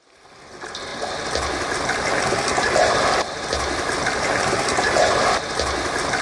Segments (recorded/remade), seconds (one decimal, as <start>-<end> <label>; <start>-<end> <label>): 0.0-6.2 recorded